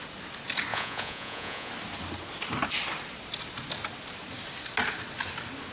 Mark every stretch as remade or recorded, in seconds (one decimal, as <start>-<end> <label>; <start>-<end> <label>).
0.0-0.7 recorded; 0.7-1.7 remade; 1.7-5.7 recorded